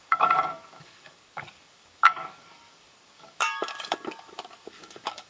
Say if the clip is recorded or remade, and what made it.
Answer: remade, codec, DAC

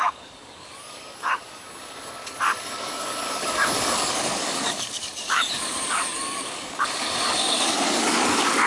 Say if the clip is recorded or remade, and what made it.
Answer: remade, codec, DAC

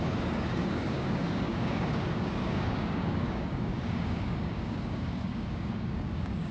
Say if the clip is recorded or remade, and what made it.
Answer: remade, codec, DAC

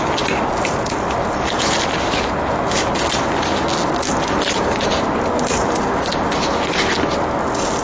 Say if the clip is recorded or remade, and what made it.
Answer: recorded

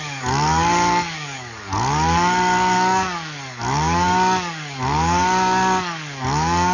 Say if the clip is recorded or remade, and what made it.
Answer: remade, codec, DAC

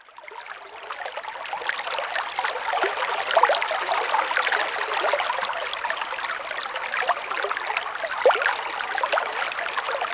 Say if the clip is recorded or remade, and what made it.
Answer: recorded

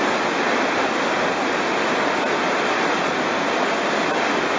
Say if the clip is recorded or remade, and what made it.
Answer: recorded